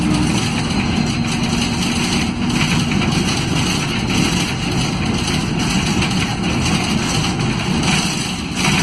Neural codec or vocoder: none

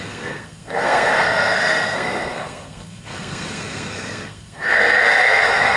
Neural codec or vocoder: codec, SNAC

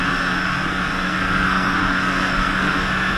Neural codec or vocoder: codec, SNAC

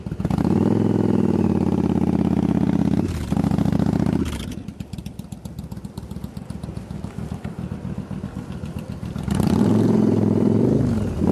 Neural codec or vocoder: none